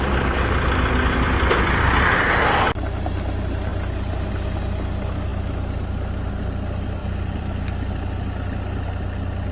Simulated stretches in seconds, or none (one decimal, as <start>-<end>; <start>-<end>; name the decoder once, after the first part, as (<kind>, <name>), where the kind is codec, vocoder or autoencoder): 7.0-8.0 (vocoder, BigVGAN v2)